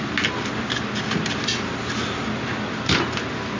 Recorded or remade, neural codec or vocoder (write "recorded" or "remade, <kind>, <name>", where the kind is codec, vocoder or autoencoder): recorded